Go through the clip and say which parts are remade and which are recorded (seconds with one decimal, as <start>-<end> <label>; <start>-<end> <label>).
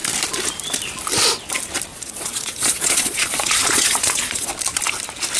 0.0-1.9 recorded; 1.9-4.5 remade; 4.5-5.4 recorded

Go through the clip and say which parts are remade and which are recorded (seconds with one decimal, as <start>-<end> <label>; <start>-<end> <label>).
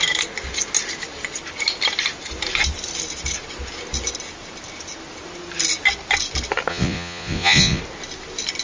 0.0-6.7 recorded; 6.7-7.8 remade; 7.8-8.6 recorded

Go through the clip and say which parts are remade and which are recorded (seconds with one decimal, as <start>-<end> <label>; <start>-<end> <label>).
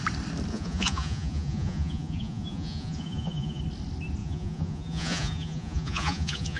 0.0-0.5 recorded; 0.5-3.6 remade; 3.6-4.2 recorded; 4.2-6.6 remade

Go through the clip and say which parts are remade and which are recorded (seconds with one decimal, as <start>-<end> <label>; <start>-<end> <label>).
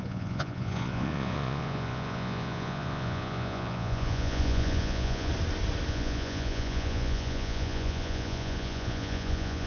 0.0-5.3 remade; 5.3-5.9 recorded; 5.9-9.7 remade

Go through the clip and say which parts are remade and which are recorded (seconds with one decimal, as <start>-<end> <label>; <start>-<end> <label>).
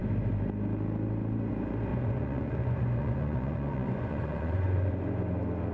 0.0-1.9 recorded; 1.9-4.9 remade; 4.9-5.7 recorded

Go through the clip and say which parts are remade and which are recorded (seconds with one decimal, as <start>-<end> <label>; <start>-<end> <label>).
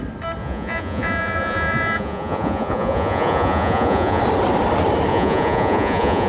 0.0-0.4 recorded; 0.4-4.2 remade; 4.2-5.1 recorded; 5.1-6.3 remade